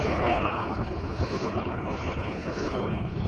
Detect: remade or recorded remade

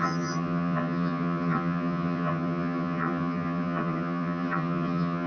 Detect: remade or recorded remade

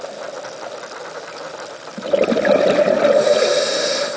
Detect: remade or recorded recorded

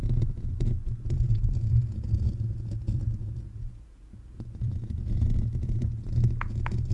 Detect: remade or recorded remade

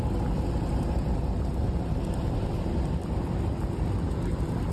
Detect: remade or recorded recorded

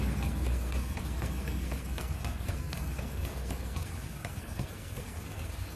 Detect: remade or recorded remade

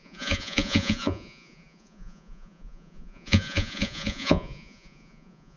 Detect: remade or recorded remade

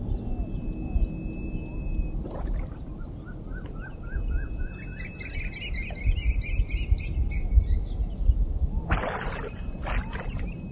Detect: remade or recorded recorded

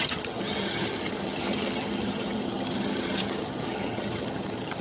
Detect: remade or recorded remade